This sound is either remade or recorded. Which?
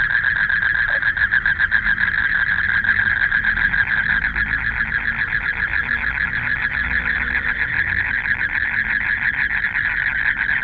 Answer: recorded